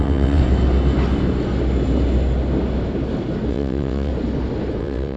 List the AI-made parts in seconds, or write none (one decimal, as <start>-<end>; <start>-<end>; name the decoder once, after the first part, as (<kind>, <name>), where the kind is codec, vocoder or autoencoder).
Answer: 0.0-0.4 (vocoder, WaveNeXt); 3.5-4.1; 4.8-5.2